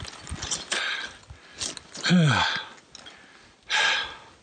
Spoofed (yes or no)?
no